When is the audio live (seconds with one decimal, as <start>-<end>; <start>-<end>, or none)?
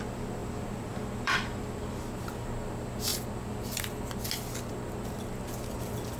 0.0-0.4; 2.1-6.2